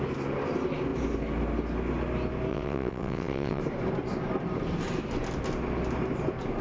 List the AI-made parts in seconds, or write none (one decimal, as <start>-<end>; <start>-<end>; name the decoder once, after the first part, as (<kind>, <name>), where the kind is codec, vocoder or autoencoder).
2.5-3.6 (vocoder, WaveNeXt)